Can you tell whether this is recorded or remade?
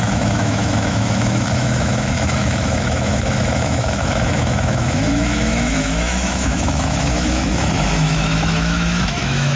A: remade